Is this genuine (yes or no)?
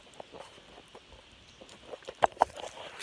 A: yes